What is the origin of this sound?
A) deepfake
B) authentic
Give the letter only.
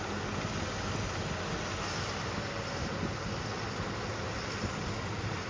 B